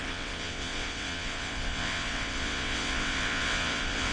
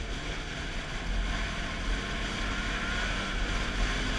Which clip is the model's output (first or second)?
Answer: first